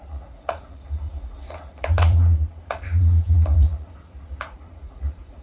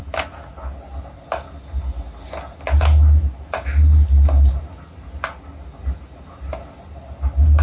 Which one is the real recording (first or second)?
second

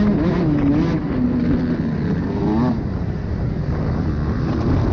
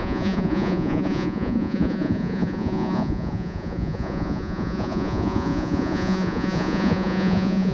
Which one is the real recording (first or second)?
first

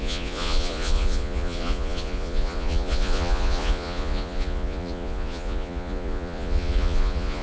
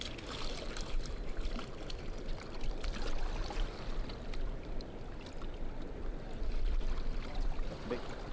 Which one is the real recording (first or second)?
second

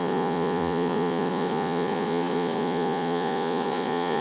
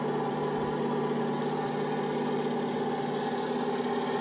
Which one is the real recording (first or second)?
second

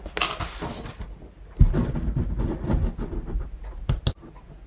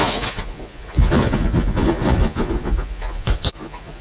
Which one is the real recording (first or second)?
first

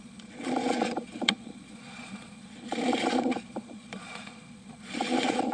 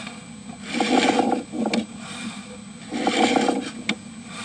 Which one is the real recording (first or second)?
second